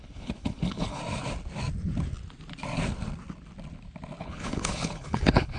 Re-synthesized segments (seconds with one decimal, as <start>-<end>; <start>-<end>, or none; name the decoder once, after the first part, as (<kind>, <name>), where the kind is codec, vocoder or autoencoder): 0.0-1.0 (codec, HILCodec); 4.2-5.6